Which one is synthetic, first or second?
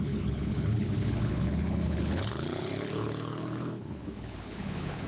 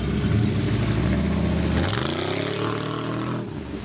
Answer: first